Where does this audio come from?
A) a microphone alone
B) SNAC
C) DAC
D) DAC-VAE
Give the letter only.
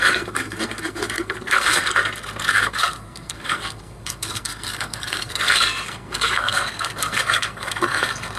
B